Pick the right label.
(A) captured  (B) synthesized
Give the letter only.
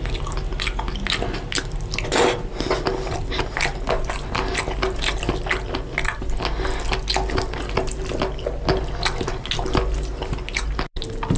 A